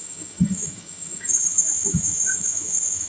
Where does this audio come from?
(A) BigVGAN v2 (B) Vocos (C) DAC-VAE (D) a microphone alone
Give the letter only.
C